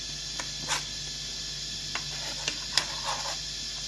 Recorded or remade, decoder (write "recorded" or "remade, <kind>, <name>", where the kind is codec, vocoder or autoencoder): recorded